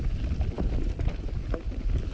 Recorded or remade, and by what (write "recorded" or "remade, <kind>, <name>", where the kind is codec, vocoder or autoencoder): recorded